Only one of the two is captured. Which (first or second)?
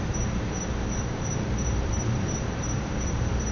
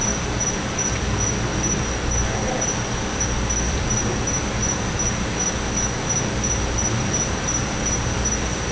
second